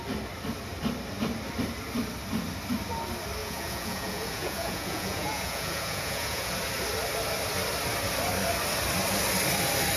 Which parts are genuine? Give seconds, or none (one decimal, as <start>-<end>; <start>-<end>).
0.0-3.4; 6.5-10.0